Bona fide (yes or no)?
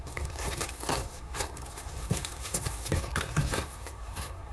no